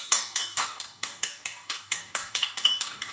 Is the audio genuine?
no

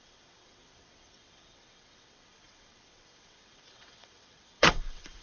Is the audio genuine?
no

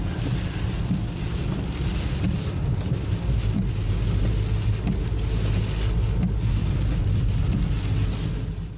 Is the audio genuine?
yes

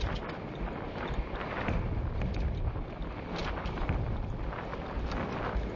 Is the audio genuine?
yes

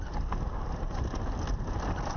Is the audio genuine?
yes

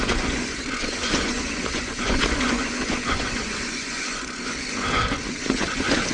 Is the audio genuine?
no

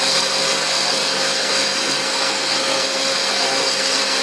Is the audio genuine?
no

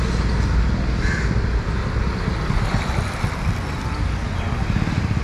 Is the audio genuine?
yes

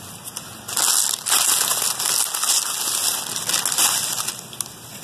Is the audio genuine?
yes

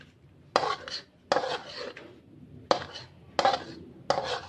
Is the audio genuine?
yes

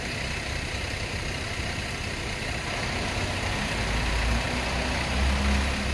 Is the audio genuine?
yes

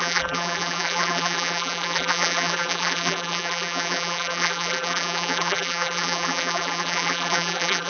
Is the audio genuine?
no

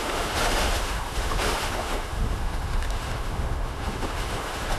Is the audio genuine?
no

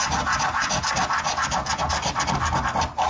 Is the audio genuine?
yes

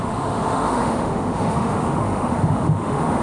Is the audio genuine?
no